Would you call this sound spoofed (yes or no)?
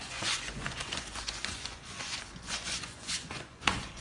yes